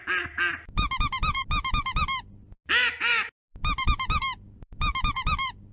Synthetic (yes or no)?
no